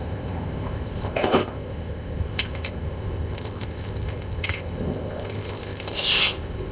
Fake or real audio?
fake